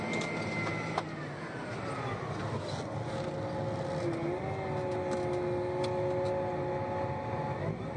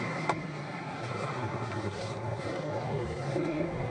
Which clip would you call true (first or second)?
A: first